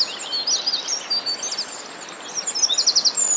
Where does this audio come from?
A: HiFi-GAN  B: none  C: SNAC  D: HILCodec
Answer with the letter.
B